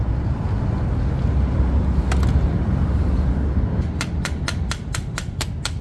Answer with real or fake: real